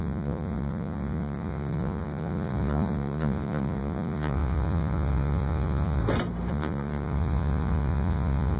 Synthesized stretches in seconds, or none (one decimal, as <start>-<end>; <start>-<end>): 0.0-6.0; 6.5-8.6

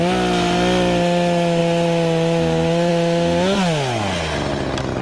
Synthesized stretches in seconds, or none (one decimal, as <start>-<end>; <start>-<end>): none

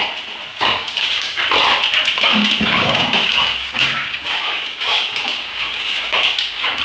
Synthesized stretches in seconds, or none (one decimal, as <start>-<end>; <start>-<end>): 0.5-1.4; 2.3-6.8

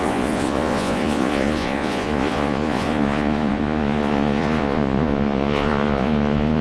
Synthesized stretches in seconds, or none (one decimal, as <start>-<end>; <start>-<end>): 0.0-6.6

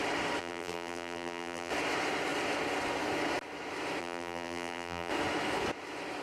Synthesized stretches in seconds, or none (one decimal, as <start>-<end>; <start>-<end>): 0.4-1.7; 4.0-5.1

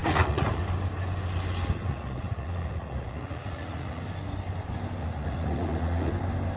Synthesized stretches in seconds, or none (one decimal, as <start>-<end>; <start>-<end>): 0.0-0.6; 1.8-4.0; 5.0-6.1

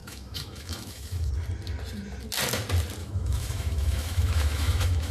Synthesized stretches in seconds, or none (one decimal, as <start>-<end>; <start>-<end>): 0.0-1.3; 3.0-5.1